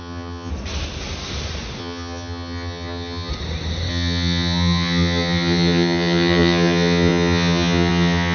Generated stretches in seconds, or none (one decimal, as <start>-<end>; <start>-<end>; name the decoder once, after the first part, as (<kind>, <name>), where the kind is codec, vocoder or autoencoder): 0.0-0.5 (vocoder, HiFi-GAN); 1.8-3.3; 3.9-8.3